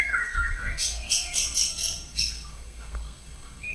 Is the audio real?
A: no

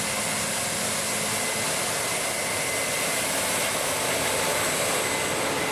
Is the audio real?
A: yes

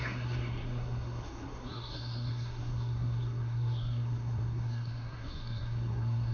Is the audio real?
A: no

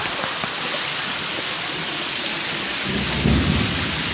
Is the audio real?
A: yes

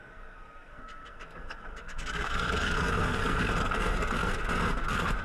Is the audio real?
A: no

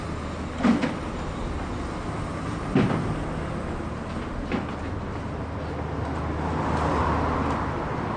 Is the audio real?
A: yes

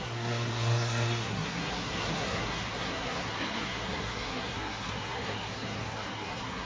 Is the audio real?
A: no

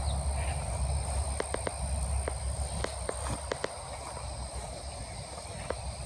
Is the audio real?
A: yes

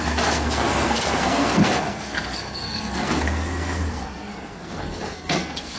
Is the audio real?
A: no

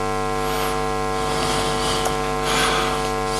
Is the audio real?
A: yes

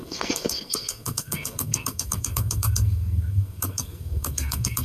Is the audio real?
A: no